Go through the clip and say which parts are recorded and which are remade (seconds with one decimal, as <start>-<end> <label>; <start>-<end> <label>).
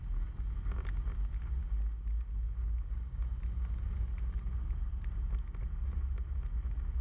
0.0-7.0 recorded